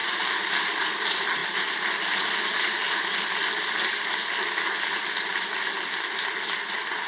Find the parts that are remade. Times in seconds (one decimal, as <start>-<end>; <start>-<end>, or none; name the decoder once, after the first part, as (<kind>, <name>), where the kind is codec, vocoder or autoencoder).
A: none

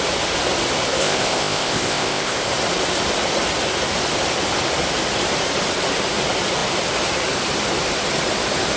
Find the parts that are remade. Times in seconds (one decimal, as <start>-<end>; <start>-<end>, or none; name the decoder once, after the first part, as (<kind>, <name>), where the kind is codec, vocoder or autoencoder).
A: 1.0-2.5 (codec, ZipCodec)

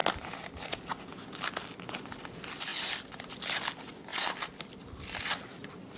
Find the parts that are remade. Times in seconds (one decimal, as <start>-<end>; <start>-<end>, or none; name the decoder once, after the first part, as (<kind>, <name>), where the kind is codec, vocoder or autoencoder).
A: none